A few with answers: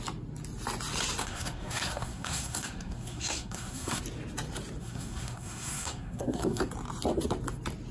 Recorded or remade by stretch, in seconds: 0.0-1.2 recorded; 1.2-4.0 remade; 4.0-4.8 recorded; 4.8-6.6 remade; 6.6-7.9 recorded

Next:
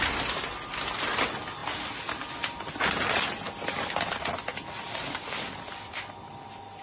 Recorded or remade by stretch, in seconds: 0.0-6.8 recorded

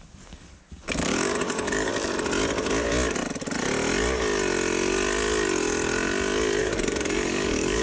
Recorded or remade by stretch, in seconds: 0.0-1.9 remade; 1.9-6.6 recorded; 6.6-7.8 remade

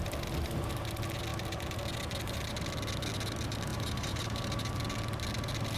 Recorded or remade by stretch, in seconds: 0.0-3.7 recorded; 3.7-4.8 remade; 4.8-5.8 recorded

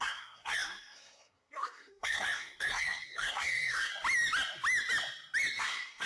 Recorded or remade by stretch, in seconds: 0.0-3.9 remade; 3.9-5.6 recorded; 5.6-6.1 remade

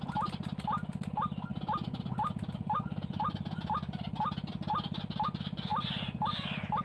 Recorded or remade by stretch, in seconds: 0.0-6.8 recorded

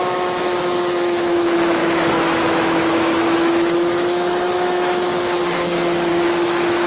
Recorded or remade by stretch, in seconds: 0.0-5.4 remade; 5.4-6.1 recorded; 6.1-6.9 remade